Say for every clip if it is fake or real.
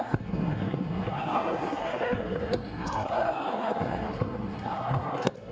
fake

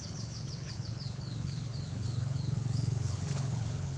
fake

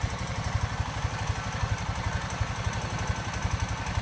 real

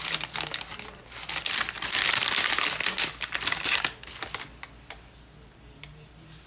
real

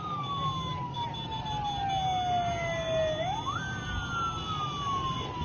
real